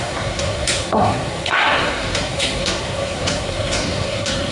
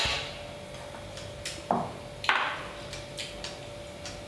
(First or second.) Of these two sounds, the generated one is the first